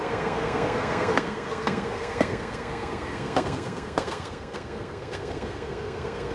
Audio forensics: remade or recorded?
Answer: remade